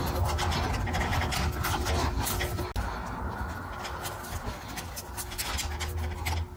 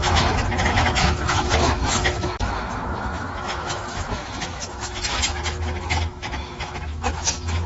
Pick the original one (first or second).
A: first